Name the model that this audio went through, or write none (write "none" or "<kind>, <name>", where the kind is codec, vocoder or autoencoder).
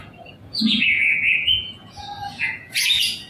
vocoder, Vocos